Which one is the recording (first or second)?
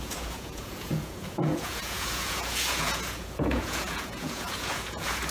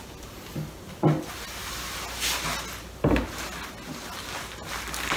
second